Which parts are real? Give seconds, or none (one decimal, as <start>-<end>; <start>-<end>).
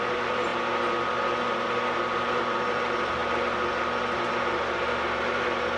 0.0-5.8